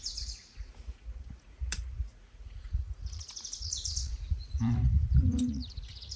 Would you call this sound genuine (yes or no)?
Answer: no